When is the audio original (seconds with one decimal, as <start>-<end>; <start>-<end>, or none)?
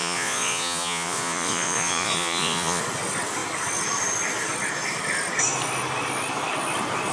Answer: 2.8-7.1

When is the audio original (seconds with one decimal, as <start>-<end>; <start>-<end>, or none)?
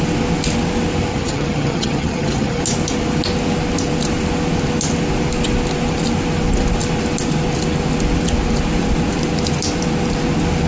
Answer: 0.0-1.1; 2.6-10.7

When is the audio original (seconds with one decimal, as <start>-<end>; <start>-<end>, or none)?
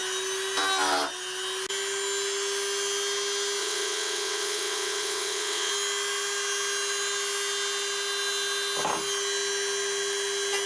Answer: 0.0-3.6; 5.7-10.7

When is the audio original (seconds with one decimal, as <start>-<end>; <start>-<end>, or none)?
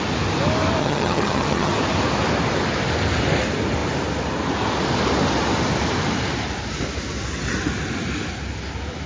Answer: 0.0-0.8; 1.7-9.1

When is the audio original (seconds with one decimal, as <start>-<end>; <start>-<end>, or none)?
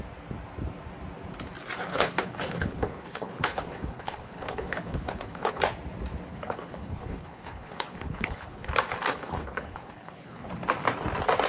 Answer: 0.0-1.9; 5.6-6.3; 8.7-9.1; 10.5-11.5